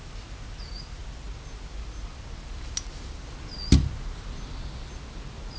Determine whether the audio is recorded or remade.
recorded